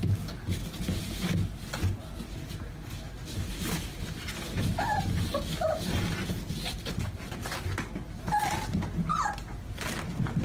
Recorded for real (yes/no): yes